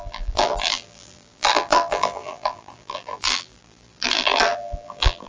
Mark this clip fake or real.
fake